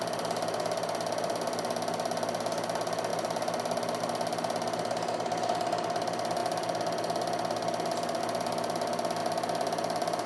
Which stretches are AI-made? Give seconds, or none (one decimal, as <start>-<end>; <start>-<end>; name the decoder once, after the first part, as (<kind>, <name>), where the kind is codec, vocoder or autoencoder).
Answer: none